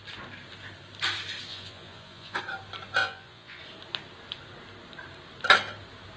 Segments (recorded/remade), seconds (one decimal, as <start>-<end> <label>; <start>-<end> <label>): 0.0-1.5 recorded; 1.5-2.4 remade; 2.4-3.0 recorded; 3.0-3.6 remade; 3.6-6.2 recorded